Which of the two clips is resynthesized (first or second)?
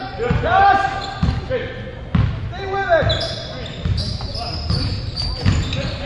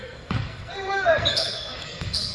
second